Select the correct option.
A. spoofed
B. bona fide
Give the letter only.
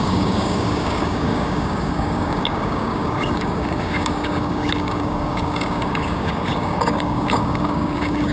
A